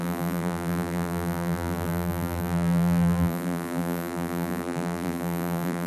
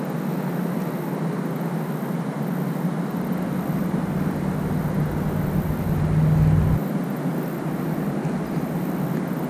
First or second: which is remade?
first